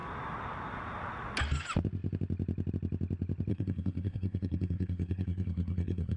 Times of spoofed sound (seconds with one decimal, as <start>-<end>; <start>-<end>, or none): 3.5-6.2

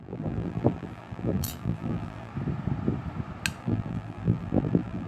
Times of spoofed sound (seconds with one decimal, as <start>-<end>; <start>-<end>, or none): 0.0-2.3; 3.6-5.1

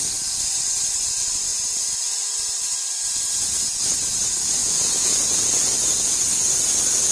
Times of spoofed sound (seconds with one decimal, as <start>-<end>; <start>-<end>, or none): 4.6-6.6

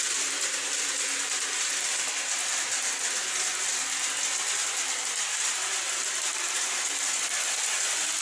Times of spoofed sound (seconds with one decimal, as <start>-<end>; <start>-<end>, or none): none

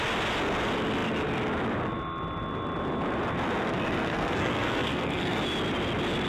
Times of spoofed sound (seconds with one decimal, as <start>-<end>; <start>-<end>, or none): 3.6-5.4